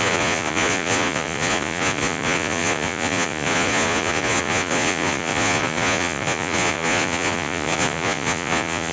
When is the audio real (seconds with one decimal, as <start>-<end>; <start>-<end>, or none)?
none